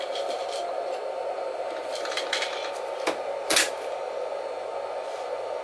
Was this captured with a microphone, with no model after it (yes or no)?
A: yes